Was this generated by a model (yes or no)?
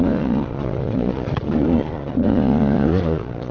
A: yes